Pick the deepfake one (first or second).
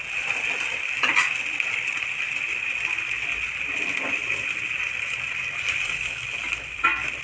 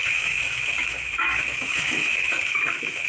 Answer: second